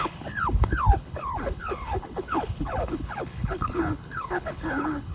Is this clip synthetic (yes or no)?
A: yes